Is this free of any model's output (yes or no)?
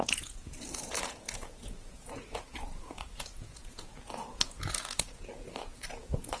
no